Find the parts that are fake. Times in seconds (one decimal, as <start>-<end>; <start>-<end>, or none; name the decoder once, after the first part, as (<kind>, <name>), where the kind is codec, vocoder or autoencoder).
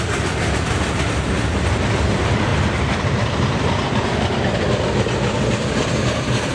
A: 2.5-4.5 (vocoder, BigVGAN v2)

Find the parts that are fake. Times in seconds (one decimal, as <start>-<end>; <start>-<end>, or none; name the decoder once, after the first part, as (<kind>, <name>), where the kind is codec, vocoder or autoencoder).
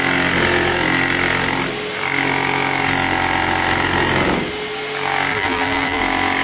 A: 5.3-6.0 (vocoder, BigVGAN v2)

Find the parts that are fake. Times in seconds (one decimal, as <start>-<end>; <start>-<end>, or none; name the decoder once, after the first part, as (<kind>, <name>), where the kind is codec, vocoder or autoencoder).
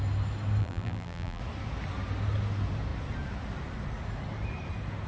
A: 0.6-1.4 (vocoder, BigVGAN v2)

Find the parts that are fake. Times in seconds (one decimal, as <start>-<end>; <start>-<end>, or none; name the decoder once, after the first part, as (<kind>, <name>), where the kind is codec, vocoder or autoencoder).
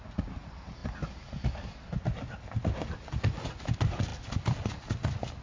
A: none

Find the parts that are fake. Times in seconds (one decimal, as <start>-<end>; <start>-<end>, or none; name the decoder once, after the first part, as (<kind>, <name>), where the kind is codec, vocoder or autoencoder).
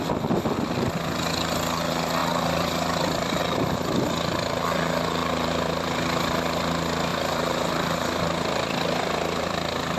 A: 2.2-3.4 (vocoder, BigVGAN v2); 5.2-6.4; 7.1-10.0